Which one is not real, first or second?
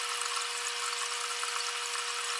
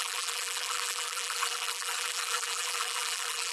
second